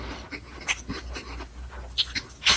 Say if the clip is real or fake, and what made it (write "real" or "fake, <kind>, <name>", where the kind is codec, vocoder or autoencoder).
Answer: real